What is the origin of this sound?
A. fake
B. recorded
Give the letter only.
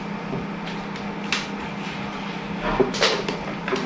B